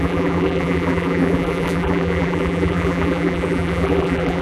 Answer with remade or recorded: remade